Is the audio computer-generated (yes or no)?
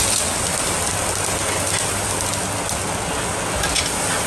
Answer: no